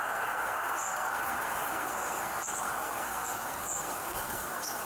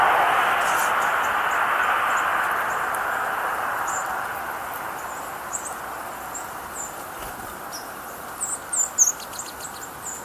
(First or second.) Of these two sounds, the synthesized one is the first